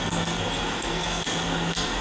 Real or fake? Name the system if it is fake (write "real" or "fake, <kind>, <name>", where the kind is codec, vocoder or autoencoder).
fake, codec, SNAC